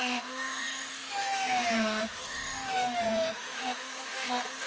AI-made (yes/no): yes